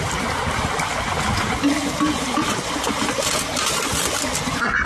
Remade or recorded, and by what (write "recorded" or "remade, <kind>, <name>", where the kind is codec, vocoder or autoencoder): recorded